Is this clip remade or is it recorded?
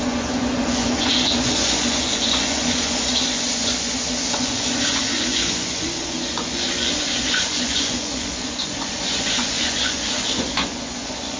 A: remade